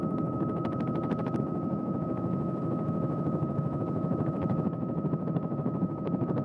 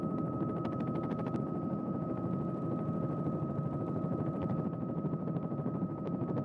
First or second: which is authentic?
second